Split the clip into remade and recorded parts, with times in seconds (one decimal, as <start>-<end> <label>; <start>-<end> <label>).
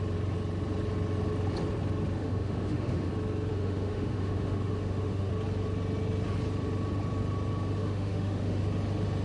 0.0-2.2 recorded; 2.2-3.1 remade; 3.1-3.5 recorded; 3.5-5.3 remade; 5.3-7.8 recorded; 7.8-8.6 remade; 8.6-9.2 recorded